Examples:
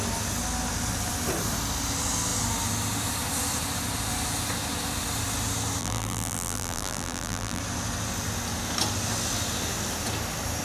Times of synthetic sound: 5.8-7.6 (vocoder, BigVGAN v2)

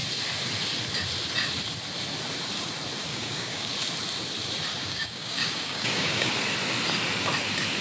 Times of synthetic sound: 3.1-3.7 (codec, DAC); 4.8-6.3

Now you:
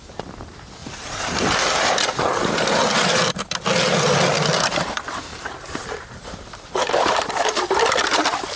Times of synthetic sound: 0.8-1.3 (vocoder, BigVGAN v2); 5.3-7.3

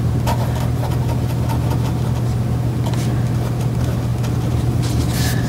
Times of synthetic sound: none